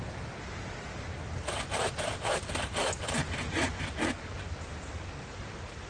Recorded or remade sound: recorded